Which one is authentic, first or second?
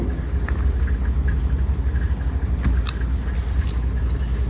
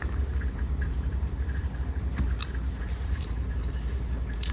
first